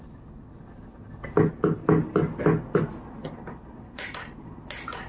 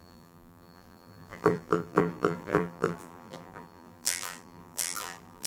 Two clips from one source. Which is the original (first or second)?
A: first